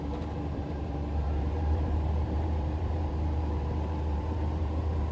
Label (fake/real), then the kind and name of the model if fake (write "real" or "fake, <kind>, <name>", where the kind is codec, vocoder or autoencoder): fake, vocoder, BigVGAN v2